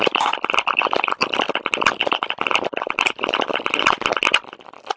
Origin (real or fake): real